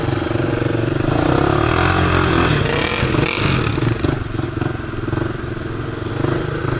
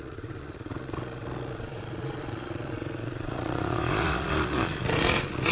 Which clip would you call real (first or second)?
first